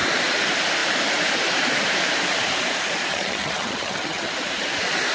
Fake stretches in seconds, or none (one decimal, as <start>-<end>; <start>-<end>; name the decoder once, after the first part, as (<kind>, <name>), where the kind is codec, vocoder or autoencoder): 3.1-4.3 (vocoder, HiFi-GAN)